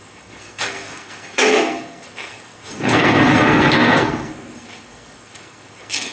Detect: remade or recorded remade